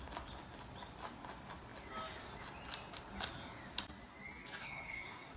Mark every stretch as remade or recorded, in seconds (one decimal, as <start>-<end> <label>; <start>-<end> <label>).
0.0-4.6 recorded; 4.6-5.4 remade